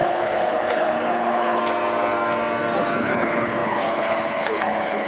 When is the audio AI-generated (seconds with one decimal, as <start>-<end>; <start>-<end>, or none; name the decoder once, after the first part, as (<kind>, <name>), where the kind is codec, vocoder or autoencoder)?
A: 0.0-1.6 (codec, HILCodec); 3.0-5.1